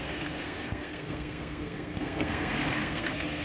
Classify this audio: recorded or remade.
remade